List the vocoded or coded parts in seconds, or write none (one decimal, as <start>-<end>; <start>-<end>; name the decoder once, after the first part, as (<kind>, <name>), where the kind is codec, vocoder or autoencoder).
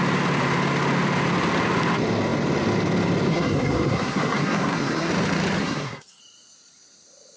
3.3-5.1 (codec, SNAC); 5.6-6.2